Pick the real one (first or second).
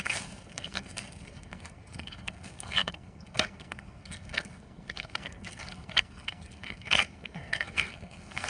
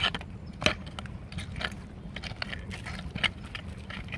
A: second